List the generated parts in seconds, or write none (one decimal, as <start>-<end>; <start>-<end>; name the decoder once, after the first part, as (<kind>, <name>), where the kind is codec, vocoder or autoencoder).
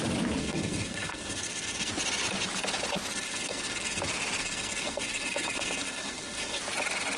0.4-1.9 (codec, SNAC); 3.1-4.0; 4.4-6.6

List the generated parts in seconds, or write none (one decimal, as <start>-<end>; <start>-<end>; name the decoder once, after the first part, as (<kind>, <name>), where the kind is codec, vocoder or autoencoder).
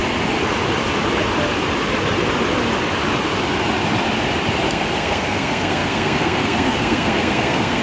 4.7-7.8 (codec, SNAC)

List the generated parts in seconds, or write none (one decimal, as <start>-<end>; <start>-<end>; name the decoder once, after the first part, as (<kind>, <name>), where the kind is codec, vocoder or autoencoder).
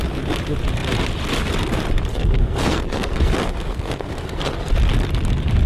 2.1-4.6 (codec, SNAC)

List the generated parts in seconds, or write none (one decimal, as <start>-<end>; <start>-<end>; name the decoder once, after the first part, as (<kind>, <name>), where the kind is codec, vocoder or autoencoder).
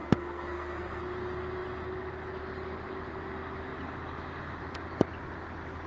0.0-1.0 (codec, SNAC)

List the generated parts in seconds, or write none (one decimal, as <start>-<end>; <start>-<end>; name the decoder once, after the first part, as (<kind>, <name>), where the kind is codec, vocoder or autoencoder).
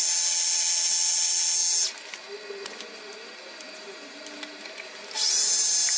none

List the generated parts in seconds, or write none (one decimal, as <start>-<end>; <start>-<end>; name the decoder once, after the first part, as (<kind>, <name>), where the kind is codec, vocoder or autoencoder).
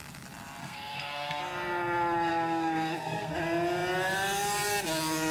0.6-1.4 (codec, SNAC); 2.3-3.3